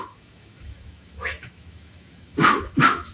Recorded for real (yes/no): no